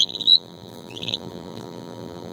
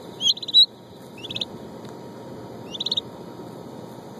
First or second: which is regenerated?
first